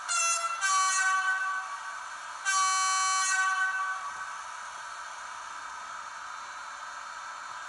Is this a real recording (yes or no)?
yes